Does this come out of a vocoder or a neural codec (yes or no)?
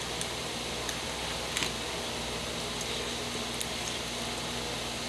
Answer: no